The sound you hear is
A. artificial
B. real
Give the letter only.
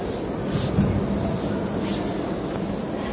B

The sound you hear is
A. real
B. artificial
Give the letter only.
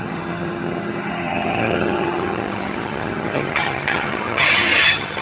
B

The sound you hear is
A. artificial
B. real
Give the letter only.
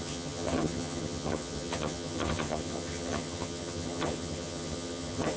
A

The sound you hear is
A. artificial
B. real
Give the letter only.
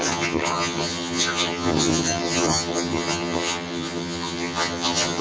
A